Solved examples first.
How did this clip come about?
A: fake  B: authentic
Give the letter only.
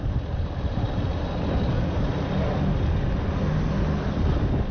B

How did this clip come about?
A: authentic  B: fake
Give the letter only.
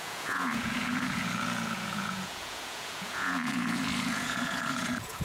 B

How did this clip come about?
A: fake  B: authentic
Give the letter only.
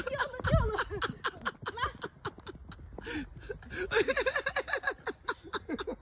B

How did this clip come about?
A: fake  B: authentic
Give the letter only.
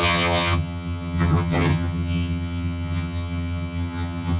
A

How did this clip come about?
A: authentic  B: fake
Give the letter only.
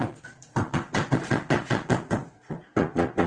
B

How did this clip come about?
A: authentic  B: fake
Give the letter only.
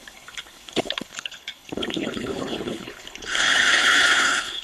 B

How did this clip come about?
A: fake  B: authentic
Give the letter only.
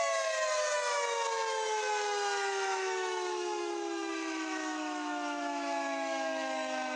A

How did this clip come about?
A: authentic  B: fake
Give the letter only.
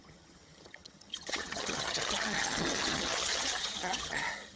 B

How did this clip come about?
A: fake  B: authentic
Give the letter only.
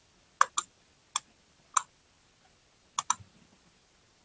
B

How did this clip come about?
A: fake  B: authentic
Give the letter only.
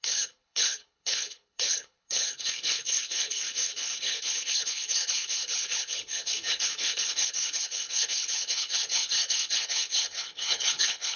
A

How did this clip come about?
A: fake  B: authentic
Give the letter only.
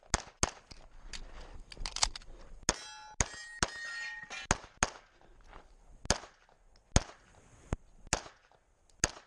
B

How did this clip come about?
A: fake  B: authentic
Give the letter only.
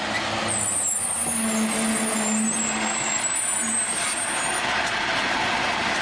B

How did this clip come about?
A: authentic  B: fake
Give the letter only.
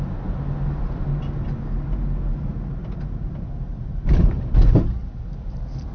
A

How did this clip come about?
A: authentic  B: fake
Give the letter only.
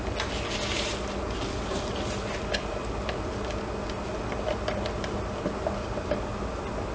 A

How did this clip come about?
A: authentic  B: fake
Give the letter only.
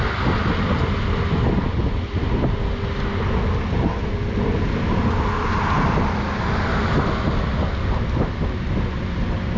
A